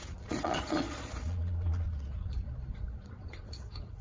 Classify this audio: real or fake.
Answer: fake